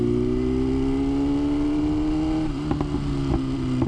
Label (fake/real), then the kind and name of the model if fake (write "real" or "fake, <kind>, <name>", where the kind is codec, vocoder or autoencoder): real